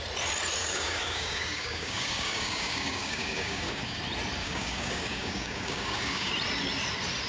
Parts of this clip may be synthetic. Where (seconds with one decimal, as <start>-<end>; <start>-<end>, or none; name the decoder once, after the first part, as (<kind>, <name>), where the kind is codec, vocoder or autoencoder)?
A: 0.6-4.0 (codec, DAC); 4.4-6.3